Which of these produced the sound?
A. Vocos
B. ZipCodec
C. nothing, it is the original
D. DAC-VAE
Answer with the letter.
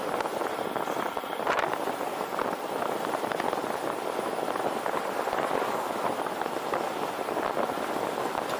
C